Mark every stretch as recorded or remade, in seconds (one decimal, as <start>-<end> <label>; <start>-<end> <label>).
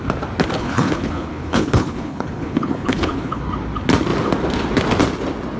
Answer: 0.0-0.6 recorded; 0.6-3.4 remade; 3.4-5.6 recorded